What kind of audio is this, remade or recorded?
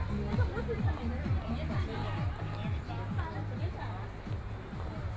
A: recorded